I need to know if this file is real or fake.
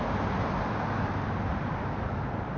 fake